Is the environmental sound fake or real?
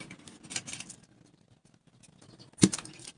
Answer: real